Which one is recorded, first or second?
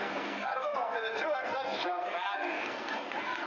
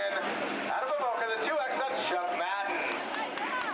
second